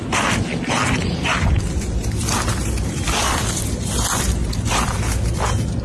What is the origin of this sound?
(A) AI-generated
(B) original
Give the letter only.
B